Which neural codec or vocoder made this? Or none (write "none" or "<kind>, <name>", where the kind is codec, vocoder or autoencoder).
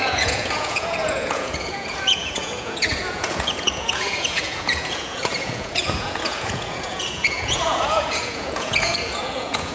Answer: vocoder, Vocos